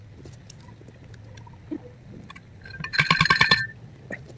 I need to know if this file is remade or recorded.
recorded